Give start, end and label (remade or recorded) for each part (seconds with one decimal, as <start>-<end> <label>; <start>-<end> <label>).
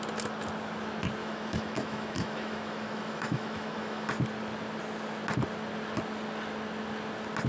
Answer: 0.0-1.2 recorded; 1.2-4.1 remade; 4.1-7.5 recorded